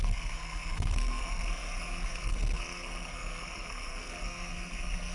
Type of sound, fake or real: fake